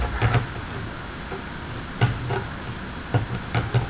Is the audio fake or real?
real